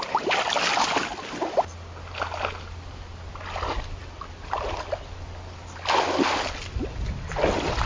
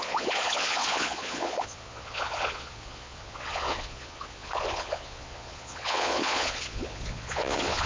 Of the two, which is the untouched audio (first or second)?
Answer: first